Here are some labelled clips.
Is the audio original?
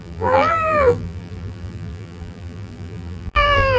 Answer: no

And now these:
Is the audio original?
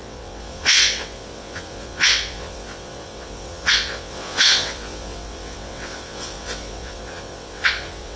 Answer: no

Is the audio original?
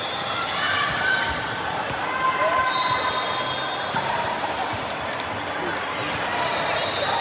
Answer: yes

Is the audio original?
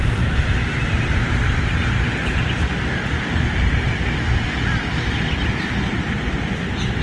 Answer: yes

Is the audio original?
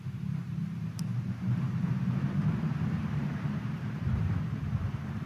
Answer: no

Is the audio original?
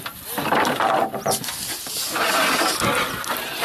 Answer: yes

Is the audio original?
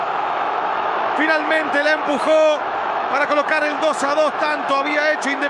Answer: no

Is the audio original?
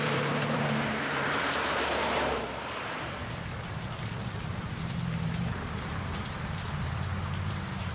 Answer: no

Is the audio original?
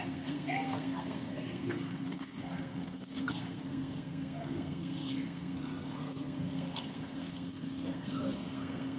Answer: no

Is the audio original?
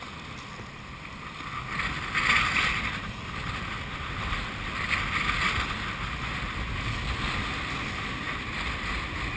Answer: yes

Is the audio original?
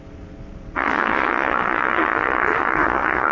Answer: no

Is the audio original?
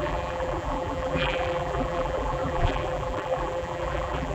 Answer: no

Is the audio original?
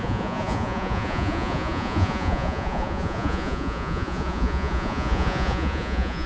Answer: no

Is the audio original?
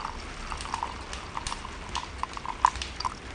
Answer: yes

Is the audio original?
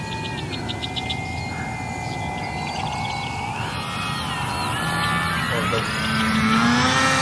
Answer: yes